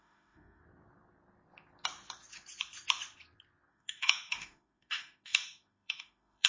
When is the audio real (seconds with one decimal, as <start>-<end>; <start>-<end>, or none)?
0.6-3.7